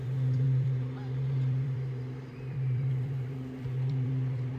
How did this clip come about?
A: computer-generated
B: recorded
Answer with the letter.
A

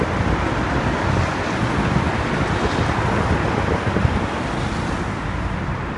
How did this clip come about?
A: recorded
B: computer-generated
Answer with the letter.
A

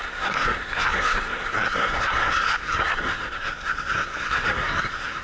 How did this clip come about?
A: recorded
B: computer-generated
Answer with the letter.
B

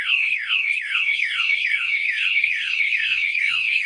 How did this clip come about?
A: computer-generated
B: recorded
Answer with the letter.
A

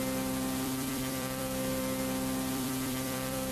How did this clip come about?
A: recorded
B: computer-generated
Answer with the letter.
B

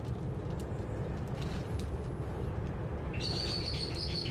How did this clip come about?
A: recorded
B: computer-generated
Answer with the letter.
A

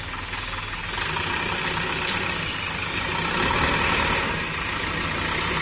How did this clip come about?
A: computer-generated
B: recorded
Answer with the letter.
B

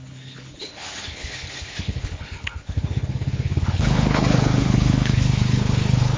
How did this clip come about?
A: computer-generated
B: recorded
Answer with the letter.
A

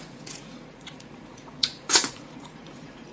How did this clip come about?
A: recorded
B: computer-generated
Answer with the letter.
B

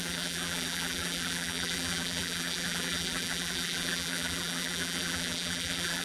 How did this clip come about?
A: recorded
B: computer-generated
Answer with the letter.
B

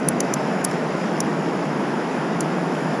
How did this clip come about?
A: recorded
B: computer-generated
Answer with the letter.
B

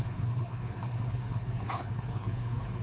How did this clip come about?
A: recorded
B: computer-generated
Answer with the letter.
B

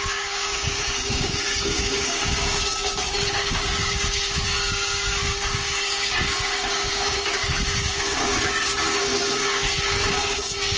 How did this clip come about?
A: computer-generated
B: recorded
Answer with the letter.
A